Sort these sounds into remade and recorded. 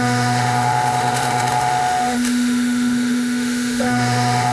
remade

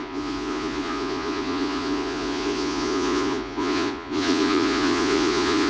remade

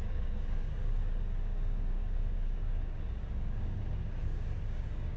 remade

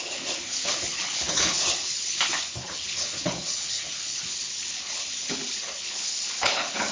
remade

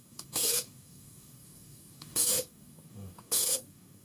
remade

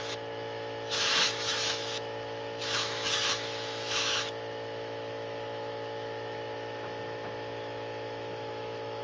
remade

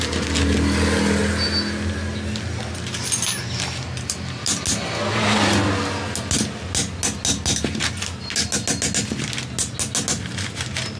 recorded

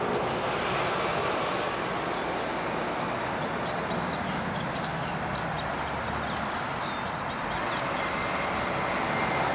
recorded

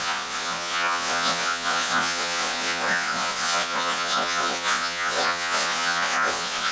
remade